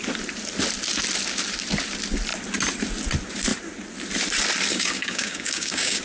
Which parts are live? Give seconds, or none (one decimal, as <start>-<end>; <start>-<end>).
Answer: 0.0-4.7